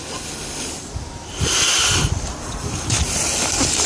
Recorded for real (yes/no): yes